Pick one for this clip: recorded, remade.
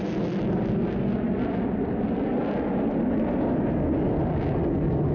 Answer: recorded